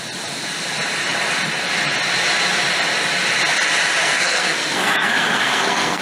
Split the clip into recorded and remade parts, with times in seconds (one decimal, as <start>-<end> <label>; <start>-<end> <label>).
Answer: 0.0-4.0 recorded; 4.0-6.0 remade